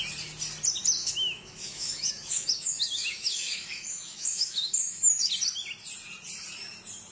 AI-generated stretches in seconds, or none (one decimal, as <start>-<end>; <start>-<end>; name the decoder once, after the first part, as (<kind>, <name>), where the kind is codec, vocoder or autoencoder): 1.0-5.3 (autoencoder, DAC-VAE)